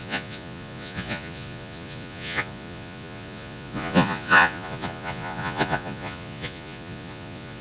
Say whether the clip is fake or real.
fake